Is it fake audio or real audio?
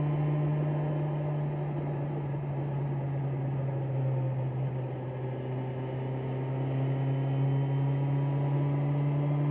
real